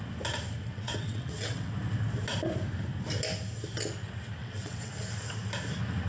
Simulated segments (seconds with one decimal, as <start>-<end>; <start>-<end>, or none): 0.7-1.7; 4.4-4.9